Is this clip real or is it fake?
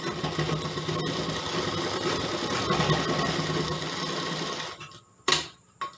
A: real